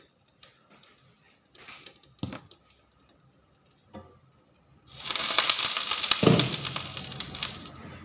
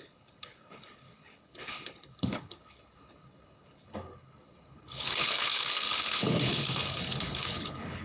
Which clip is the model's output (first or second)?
second